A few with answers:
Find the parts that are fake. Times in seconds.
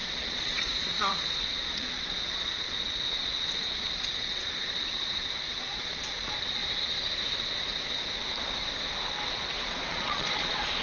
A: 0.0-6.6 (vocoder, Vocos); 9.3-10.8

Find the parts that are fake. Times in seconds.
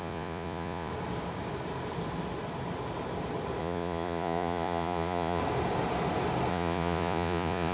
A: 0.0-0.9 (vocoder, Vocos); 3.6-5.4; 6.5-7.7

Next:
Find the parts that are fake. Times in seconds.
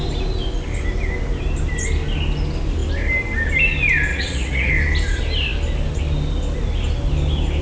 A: 4.1-4.7 (vocoder, Vocos)